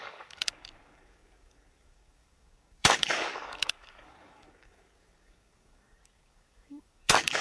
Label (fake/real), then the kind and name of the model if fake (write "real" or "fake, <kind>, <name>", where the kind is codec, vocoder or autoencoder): fake, codec, DAC